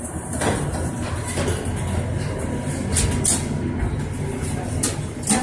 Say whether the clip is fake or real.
real